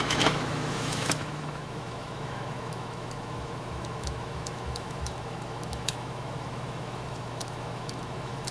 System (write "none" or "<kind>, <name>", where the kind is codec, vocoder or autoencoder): autoencoder, DAC-VAE